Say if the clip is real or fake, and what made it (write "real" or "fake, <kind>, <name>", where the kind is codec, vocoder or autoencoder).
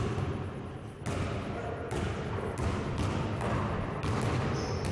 real